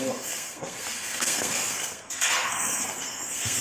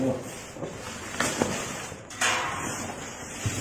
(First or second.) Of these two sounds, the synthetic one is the first